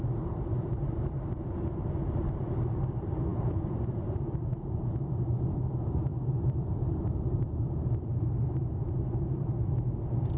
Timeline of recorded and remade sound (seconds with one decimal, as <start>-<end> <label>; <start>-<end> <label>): 0.0-10.4 remade

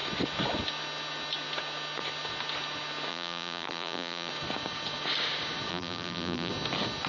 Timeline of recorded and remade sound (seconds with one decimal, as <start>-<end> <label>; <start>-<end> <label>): 0.0-3.1 recorded; 3.1-4.3 remade; 4.3-5.7 recorded; 5.7-6.5 remade; 6.5-7.1 recorded

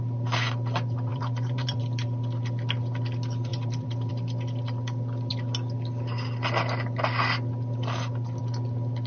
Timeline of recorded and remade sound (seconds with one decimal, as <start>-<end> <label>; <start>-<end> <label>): 0.0-1.1 recorded; 1.1-1.8 remade; 1.8-3.5 recorded; 3.5-4.1 remade; 4.1-9.1 recorded

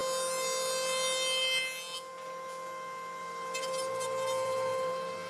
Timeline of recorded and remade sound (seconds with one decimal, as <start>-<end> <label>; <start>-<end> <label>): 0.0-3.2 recorded; 3.2-5.3 remade

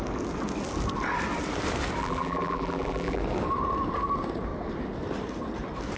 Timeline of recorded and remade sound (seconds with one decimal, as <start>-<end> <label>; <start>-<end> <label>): 0.0-2.0 recorded; 2.0-3.2 remade; 3.2-6.0 recorded

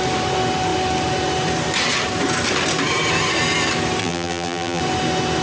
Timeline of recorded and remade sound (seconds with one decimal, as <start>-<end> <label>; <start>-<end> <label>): 0.0-4.0 recorded; 4.0-4.8 remade; 4.8-5.4 recorded